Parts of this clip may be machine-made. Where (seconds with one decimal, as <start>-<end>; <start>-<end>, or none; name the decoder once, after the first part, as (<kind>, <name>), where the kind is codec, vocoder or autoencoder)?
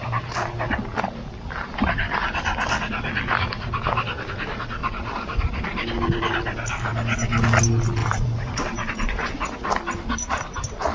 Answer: 4.8-6.2 (vocoder, BigVGAN v2); 8.0-9.3